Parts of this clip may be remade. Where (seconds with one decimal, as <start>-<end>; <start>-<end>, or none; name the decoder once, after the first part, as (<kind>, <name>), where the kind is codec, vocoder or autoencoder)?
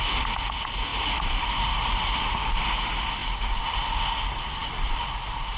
0.0-5.6 (vocoder, BigVGAN v2)